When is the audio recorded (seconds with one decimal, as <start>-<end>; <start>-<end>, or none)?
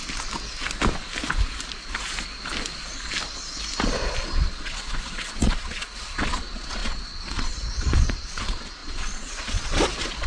0.0-4.2